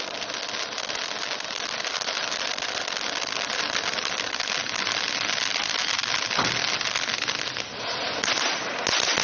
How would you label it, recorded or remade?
recorded